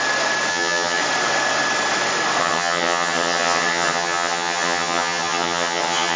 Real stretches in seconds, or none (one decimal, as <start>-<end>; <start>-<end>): 0.0-0.5; 1.0-2.4

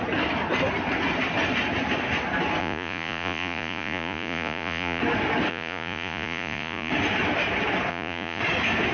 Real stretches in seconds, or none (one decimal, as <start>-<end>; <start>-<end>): 0.0-2.6; 5.0-5.5; 6.9-7.9; 8.4-8.9

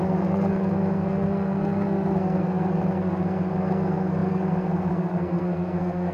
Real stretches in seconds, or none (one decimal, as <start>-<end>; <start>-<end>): none

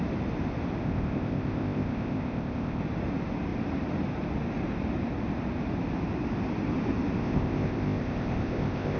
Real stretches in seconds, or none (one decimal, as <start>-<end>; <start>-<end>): 0.0-0.8; 2.8-7.2

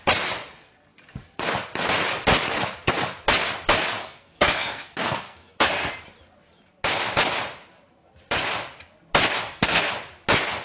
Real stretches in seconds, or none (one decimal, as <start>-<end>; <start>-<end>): 0.0-4.0; 5.9-9.4; 9.9-10.6